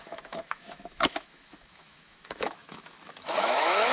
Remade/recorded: remade